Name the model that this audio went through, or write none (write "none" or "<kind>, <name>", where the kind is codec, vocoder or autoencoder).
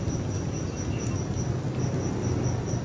none